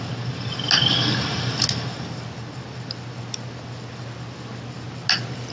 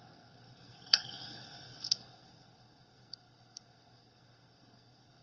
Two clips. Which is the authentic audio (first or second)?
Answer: first